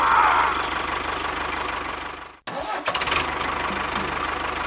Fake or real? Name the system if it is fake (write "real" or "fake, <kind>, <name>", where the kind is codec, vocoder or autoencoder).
real